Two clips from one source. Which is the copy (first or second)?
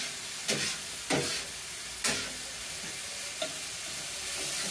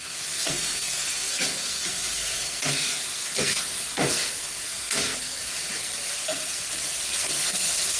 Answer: second